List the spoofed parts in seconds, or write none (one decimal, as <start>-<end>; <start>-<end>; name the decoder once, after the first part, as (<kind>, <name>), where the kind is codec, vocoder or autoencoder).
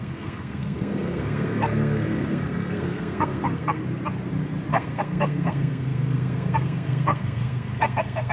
0.0-3.8 (codec, SNAC); 4.7-8.3